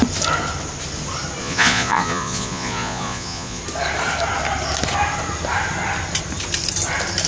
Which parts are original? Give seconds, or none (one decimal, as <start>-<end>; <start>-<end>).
0.0-1.4; 3.6-7.3